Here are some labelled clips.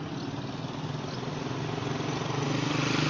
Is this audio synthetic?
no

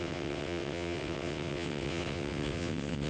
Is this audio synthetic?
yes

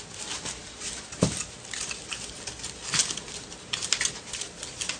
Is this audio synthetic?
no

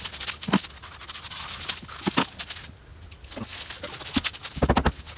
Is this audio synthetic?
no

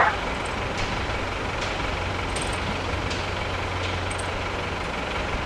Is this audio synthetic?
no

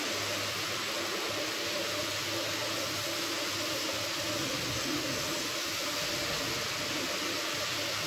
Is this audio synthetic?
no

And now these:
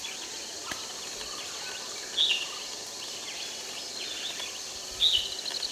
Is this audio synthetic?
no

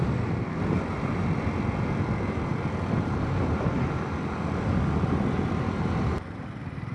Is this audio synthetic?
no